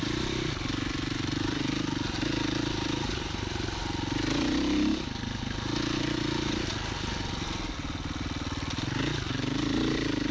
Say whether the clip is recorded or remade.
recorded